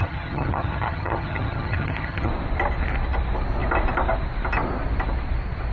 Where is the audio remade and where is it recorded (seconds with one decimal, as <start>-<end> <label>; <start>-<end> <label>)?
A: 0.0-2.3 remade; 2.3-5.7 recorded